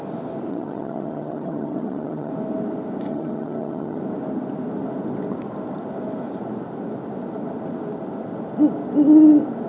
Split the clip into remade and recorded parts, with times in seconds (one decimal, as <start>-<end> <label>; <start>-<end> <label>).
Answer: 0.0-0.5 recorded; 0.5-2.3 remade; 2.3-3.1 recorded; 3.1-4.0 remade; 4.0-9.7 recorded